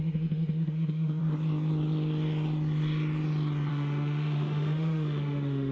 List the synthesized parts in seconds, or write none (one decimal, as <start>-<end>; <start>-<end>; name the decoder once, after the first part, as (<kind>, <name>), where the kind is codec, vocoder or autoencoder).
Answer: 0.0-1.2 (autoencoder, DAC-VAE); 3.7-5.7